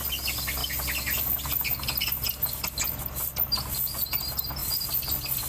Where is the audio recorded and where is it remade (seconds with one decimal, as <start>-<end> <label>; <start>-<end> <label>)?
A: 0.0-4.6 recorded; 4.6-5.1 remade; 5.1-5.5 recorded